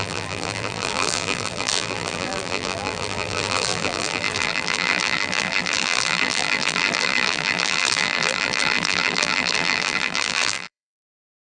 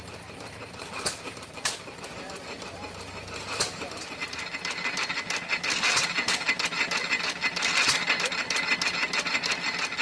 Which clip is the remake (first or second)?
first